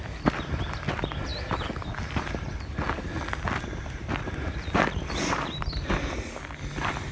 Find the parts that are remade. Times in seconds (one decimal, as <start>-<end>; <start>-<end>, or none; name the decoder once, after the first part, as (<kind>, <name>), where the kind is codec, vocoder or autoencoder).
none

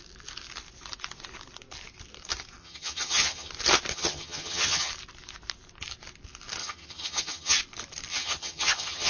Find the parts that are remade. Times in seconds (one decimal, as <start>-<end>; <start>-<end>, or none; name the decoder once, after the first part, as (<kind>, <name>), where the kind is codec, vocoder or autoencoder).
2.6-3.5 (vocoder, HiFi-GAN); 3.9-4.9; 6.6-7.6; 8.1-9.1

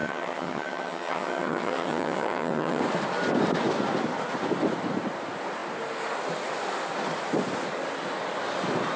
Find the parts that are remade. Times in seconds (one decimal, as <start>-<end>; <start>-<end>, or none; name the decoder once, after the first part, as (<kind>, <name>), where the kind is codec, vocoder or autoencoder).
0.0-2.8 (vocoder, HiFi-GAN)